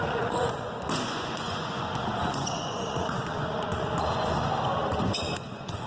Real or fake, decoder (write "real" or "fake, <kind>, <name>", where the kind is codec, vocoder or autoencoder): fake, vocoder, Vocos